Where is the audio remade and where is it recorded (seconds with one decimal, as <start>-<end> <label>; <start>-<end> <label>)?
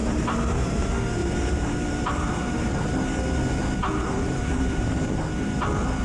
0.0-0.6 remade; 0.6-1.2 recorded; 1.2-2.9 remade; 2.9-3.8 recorded; 3.8-5.2 remade; 5.2-6.0 recorded